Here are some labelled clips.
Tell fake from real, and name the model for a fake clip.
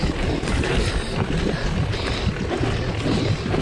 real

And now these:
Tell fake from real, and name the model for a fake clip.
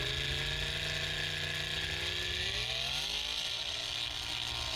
real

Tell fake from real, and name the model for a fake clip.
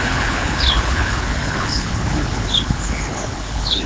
fake, codec, HILCodec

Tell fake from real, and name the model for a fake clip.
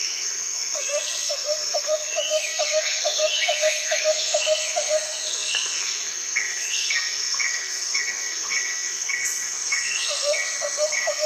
fake, codec, SNAC